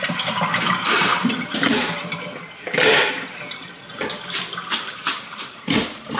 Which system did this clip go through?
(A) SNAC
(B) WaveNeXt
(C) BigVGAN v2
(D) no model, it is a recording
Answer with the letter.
C